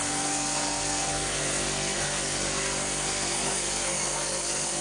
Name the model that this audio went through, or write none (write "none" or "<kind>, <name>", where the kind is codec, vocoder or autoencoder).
codec, SNAC